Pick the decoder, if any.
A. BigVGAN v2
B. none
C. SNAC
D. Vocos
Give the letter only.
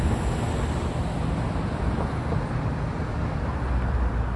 B